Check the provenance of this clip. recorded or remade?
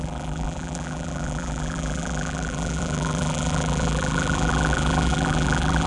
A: remade